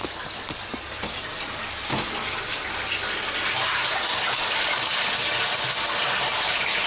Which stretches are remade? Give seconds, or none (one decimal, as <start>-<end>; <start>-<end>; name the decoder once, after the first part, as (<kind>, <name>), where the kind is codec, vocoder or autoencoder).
0.0-1.6 (vocoder, BigVGAN v2); 4.3-6.9